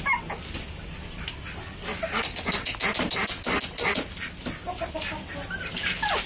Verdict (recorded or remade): recorded